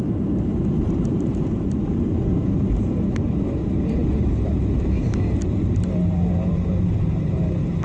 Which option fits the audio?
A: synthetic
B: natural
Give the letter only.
A